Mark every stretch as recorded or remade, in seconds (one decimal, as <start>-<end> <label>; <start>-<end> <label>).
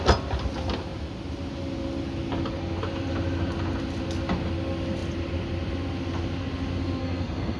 0.0-7.0 recorded; 7.0-7.6 remade